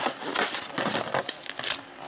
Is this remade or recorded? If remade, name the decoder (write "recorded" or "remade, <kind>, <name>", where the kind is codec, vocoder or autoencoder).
recorded